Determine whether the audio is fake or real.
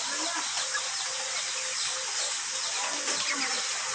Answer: real